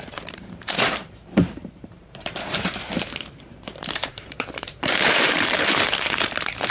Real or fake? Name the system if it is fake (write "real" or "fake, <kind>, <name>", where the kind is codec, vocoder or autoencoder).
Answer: fake, vocoder, BigVGAN v2